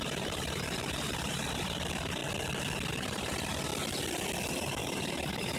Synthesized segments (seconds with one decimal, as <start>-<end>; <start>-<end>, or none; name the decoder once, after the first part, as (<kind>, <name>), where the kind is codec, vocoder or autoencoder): 0.0-2.2 (vocoder, BigVGAN v2); 2.9-3.7; 4.5-5.6